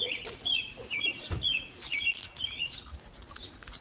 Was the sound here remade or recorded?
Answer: remade